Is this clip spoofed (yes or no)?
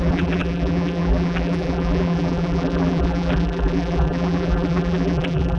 yes